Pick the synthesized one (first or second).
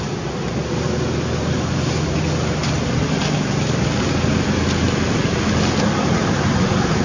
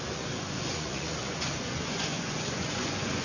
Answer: second